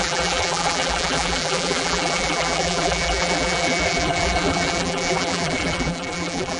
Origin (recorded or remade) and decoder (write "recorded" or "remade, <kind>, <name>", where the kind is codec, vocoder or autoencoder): remade, vocoder, BigVGAN v2